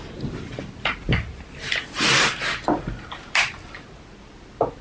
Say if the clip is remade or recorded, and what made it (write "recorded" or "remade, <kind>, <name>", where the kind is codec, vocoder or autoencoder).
recorded